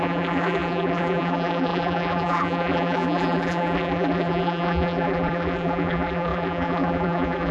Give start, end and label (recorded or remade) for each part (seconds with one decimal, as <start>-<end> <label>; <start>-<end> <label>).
0.0-7.5 remade